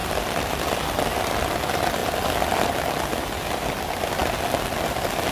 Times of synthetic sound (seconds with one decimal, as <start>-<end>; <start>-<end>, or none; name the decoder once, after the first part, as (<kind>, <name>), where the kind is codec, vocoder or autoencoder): 0.0-1.5 (vocoder, BigVGAN v2)